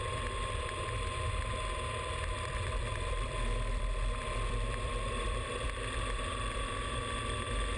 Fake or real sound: fake